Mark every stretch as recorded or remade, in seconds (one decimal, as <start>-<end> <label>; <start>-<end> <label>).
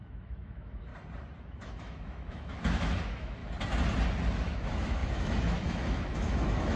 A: 0.0-0.9 remade; 0.9-1.4 recorded; 1.4-3.4 remade; 3.4-4.4 recorded; 4.4-6.8 remade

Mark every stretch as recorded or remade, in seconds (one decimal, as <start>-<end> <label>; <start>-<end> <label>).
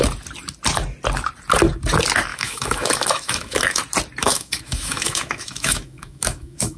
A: 0.0-2.3 recorded; 2.3-3.8 remade; 3.8-4.2 recorded; 4.2-6.8 remade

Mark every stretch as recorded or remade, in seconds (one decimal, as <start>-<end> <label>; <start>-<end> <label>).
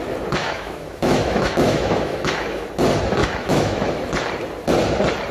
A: 0.0-0.4 recorded; 0.4-2.7 remade; 2.7-3.2 recorded; 3.2-3.9 remade; 3.9-5.3 recorded